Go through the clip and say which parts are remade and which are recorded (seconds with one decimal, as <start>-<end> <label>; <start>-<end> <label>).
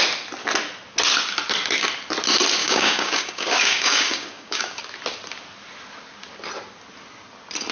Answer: 0.0-2.6 recorded; 2.6-4.8 remade; 4.8-7.7 recorded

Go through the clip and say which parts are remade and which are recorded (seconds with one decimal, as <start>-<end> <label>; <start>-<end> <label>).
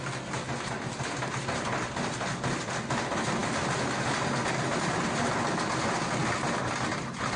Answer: 0.0-7.4 recorded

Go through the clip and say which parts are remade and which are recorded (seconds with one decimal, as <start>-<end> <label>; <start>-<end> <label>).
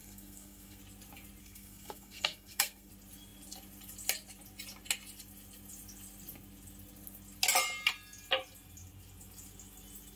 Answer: 0.0-0.8 remade; 0.8-1.4 recorded; 1.4-2.9 remade; 2.9-10.2 recorded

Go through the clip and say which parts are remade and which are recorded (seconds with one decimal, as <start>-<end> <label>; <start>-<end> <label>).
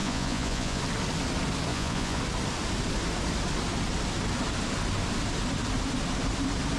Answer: 0.0-0.8 remade; 0.8-1.7 recorded; 1.7-2.2 remade; 2.2-6.8 recorded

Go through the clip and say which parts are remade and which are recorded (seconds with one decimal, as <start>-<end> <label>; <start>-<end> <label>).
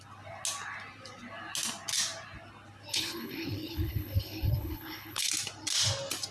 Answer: 0.0-2.9 recorded; 2.9-5.3 remade; 5.3-6.3 recorded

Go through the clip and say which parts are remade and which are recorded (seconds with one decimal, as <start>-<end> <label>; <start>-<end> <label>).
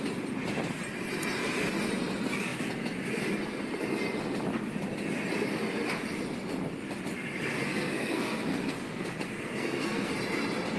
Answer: 0.0-7.6 recorded; 7.6-10.1 remade; 10.1-10.8 recorded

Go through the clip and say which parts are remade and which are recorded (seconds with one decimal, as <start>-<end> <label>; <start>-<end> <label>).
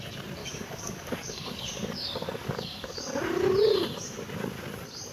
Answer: 0.0-0.4 recorded; 0.4-3.2 remade; 3.2-5.1 recorded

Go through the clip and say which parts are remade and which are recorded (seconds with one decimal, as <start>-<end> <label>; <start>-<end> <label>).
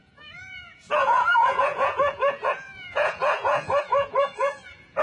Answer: 0.0-5.0 remade